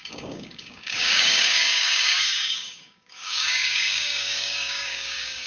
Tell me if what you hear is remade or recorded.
remade